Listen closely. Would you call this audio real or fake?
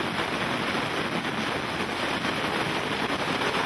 real